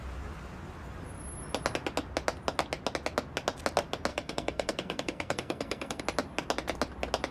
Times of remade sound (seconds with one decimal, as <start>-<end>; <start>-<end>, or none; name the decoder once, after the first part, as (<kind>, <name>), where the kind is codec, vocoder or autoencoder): 4.1-6.0 (codec, SNAC)